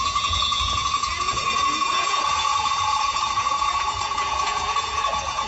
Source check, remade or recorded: remade